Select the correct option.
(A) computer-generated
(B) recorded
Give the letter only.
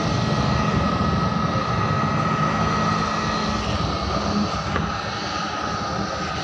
B